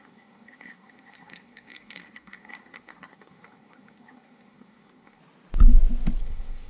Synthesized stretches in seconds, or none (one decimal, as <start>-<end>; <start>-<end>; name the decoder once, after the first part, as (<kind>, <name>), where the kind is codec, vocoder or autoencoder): 0.0-5.2 (codec, SNAC); 6.2-6.7